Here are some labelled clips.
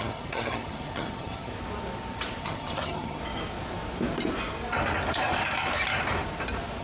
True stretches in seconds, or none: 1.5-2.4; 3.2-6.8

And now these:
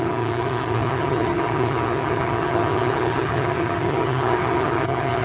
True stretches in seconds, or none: none

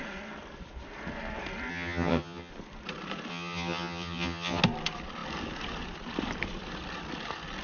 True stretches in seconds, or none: 0.0-1.7; 2.5-3.3; 4.6-7.6

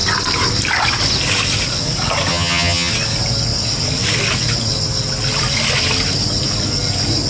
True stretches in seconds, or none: 0.0-2.3; 2.9-7.3

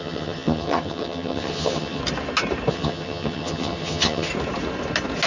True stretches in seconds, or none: 2.0-2.7; 4.3-5.3

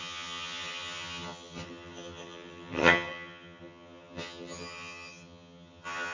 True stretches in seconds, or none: none

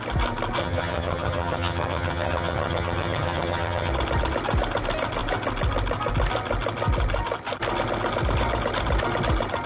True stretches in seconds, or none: 0.0-0.6; 3.9-9.7

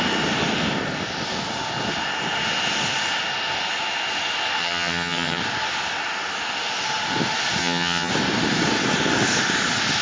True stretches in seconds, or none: 0.0-4.6; 5.4-7.6; 8.1-10.0